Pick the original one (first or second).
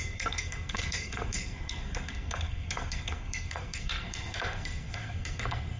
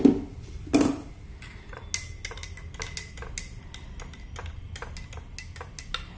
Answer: second